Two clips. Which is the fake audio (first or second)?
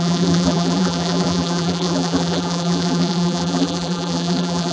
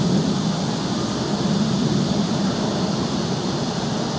first